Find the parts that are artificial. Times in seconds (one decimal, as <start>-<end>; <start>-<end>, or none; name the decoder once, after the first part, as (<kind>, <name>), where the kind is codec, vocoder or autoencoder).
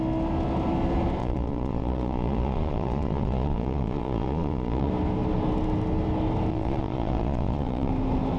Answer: 1.2-4.9 (vocoder, Vocos); 6.5-7.9